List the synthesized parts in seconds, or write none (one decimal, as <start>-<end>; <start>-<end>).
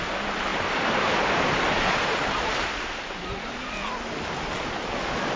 none